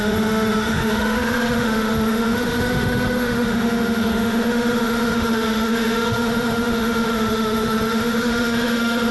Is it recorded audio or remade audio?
remade